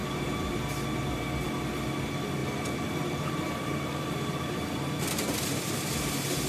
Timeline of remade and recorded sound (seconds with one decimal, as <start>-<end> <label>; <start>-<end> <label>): 0.0-0.6 remade; 0.6-2.4 recorded; 2.4-5.6 remade; 5.6-6.5 recorded